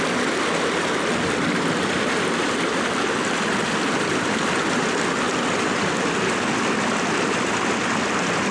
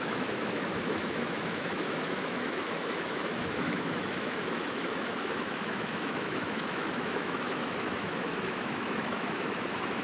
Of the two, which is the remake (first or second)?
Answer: second